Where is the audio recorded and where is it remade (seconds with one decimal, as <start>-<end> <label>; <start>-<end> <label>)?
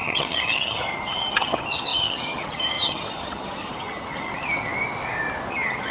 0.0-4.7 remade; 4.7-5.5 recorded; 5.5-5.9 remade